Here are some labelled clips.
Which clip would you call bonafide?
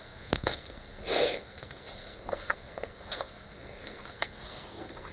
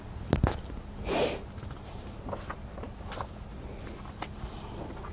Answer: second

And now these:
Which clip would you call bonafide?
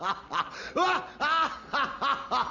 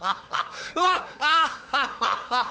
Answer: first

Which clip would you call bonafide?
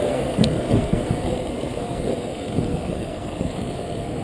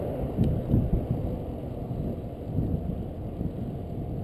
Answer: second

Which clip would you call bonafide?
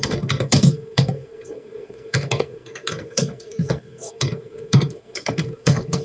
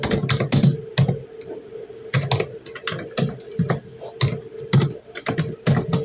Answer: second